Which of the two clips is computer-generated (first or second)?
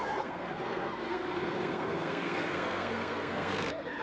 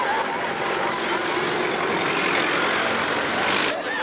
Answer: first